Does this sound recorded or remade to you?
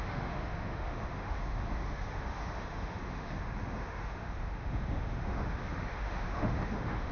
remade